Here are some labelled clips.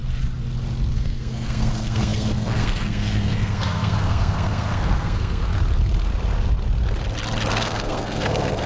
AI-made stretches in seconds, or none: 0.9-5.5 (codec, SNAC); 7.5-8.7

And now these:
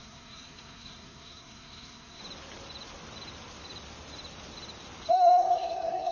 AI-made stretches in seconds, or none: 0.0-2.2 (codec, SNAC); 5.1-6.1